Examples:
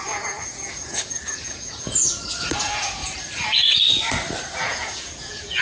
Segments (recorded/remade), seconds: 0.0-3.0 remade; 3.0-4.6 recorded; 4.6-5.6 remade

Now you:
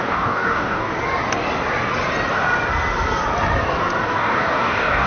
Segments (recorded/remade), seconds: 0.0-0.9 remade; 0.9-4.0 recorded; 4.0-5.1 remade

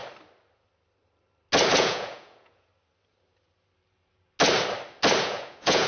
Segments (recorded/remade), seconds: 0.0-1.7 recorded; 1.7-2.7 remade; 2.7-5.2 recorded; 5.2-5.9 remade

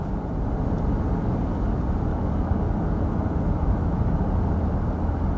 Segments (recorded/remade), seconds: 0.0-2.1 recorded; 2.1-2.7 remade; 2.7-5.4 recorded

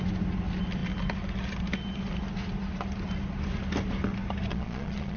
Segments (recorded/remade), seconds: 0.0-4.5 recorded; 4.5-5.2 remade